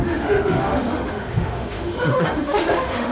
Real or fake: fake